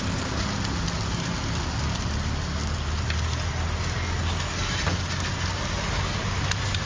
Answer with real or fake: real